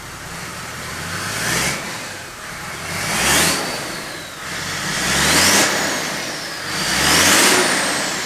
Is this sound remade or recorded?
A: recorded